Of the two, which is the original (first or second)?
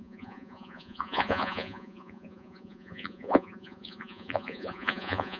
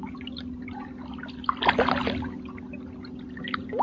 second